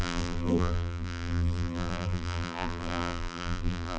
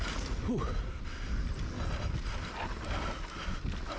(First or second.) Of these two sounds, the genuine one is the second